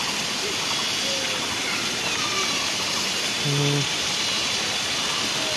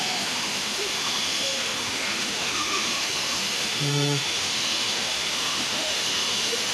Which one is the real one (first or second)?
first